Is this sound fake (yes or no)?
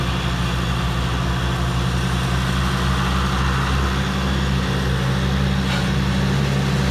no